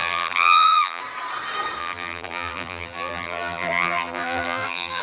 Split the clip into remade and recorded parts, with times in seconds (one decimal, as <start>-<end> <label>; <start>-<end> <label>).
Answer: 0.0-1.0 remade; 1.0-1.8 recorded; 1.8-5.0 remade